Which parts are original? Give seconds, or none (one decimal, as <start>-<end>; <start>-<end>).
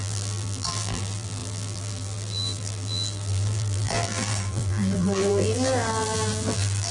none